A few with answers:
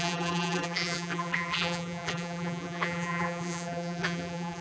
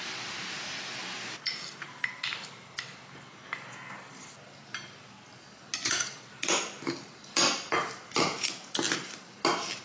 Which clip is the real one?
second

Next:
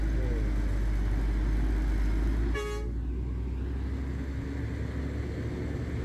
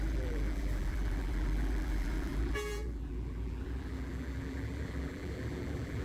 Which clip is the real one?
first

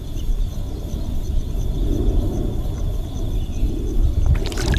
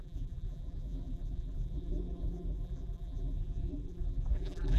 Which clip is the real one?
first